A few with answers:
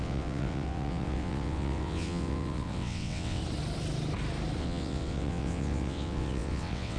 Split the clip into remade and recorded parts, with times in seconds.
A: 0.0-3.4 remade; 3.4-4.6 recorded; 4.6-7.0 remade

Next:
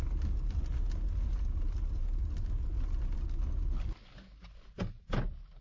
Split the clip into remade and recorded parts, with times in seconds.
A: 0.0-5.6 recorded

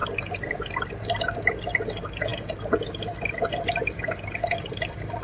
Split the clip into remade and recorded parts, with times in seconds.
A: 0.0-1.5 remade; 1.5-2.3 recorded; 2.3-5.2 remade

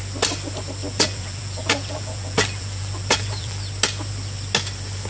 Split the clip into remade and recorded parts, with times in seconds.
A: 0.0-0.8 recorded; 0.8-3.6 remade; 3.6-5.1 recorded

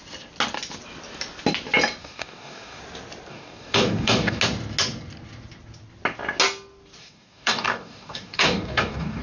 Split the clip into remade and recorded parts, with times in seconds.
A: 0.0-2.0 recorded; 2.0-2.8 remade; 2.8-3.3 recorded; 3.3-4.4 remade; 4.4-7.0 recorded; 7.0-9.2 remade

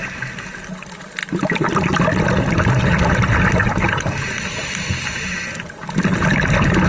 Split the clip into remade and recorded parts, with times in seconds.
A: 0.0-6.9 recorded